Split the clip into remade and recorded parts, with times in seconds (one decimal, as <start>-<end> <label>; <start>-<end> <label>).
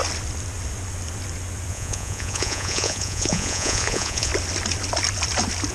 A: 0.0-1.7 recorded; 1.7-4.3 remade; 4.3-5.7 recorded